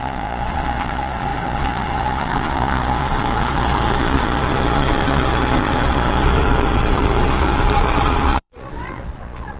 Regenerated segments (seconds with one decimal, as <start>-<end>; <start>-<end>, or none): 0.0-9.6